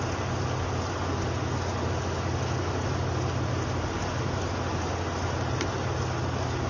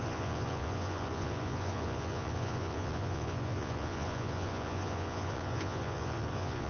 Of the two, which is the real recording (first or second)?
first